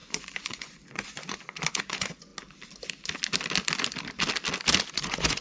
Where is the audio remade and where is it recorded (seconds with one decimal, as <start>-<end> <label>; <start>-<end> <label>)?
0.0-2.3 remade; 2.3-4.9 recorded; 4.9-5.4 remade